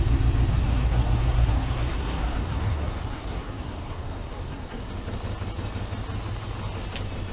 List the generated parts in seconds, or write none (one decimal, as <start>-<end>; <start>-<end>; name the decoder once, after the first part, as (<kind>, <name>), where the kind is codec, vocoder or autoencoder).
0.5-4.8 (codec, SNAC)